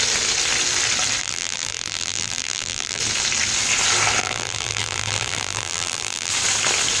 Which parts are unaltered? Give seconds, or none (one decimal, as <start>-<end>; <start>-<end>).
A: 0.0-1.2; 3.0-4.2; 6.3-7.0